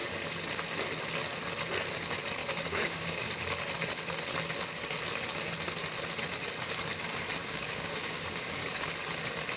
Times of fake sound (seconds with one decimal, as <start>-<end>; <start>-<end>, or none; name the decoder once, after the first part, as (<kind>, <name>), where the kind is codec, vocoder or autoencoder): 2.4-3.3 (codec, DAC); 7.4-8.9